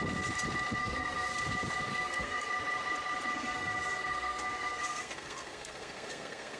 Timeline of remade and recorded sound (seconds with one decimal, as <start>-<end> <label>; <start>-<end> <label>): 0.0-0.8 recorded; 0.8-1.4 remade; 1.4-1.9 recorded; 1.9-2.5 remade; 2.5-3.3 recorded; 3.3-6.6 remade